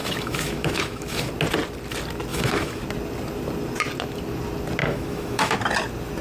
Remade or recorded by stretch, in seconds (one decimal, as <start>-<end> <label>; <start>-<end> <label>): 0.0-1.3 remade; 1.3-2.3 recorded; 2.3-2.8 remade; 2.8-4.8 recorded; 4.8-5.5 remade; 5.5-6.2 recorded